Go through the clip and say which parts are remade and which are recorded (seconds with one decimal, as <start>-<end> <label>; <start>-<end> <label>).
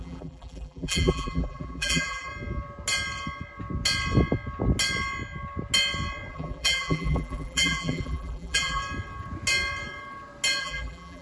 0.0-2.3 remade; 2.3-6.3 recorded; 6.3-8.8 remade; 8.8-10.6 recorded; 10.6-11.2 remade